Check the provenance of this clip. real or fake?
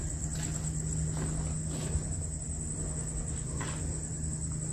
real